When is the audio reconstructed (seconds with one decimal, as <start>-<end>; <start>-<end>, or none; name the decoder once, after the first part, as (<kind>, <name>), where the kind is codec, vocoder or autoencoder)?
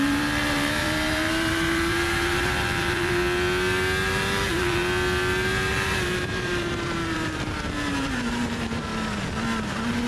0.0-3.2 (vocoder, BigVGAN v2); 4.1-4.8; 5.7-8.9